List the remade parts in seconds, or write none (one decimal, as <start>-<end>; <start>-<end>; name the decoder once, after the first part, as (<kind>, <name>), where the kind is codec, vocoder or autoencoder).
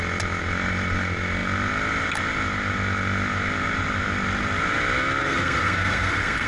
5.2-6.5 (codec, SNAC)